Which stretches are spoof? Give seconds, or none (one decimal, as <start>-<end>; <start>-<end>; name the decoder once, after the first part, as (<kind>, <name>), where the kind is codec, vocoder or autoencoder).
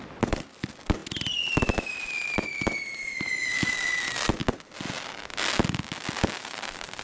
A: 0.0-4.4 (vocoder, BigVGAN v2); 6.1-7.0